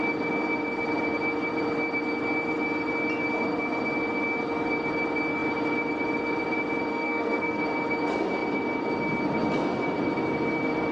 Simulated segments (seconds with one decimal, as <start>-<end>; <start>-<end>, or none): 6.9-7.6